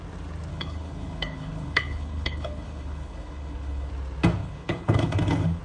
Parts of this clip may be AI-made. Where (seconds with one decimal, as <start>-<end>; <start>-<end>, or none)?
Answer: 0.5-3.9; 4.4-5.6